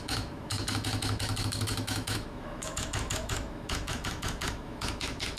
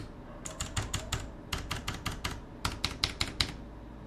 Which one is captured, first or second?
second